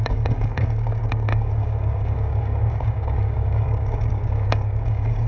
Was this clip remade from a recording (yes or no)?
yes